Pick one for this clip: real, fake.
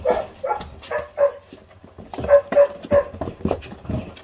real